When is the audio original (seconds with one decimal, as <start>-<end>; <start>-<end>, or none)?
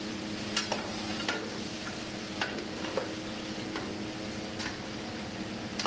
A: 0.0-5.9